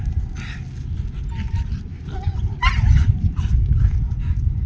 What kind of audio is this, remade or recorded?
recorded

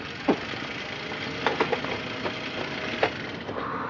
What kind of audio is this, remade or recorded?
recorded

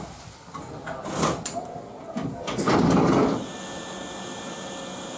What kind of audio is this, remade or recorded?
recorded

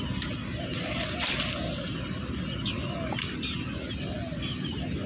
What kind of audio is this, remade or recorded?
recorded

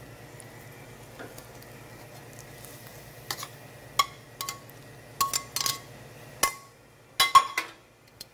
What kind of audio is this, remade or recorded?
recorded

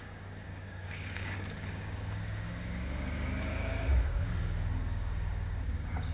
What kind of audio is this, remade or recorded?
remade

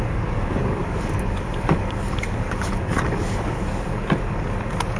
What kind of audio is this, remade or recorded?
remade